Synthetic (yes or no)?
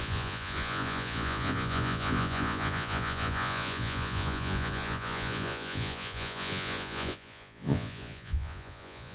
yes